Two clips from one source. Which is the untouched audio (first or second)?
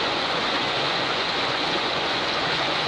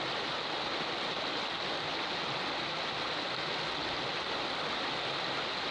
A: second